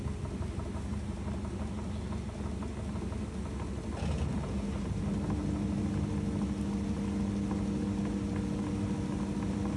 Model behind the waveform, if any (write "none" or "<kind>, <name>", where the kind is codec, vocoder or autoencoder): none